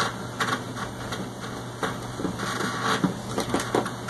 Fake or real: real